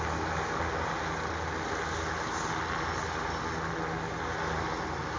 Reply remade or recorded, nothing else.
recorded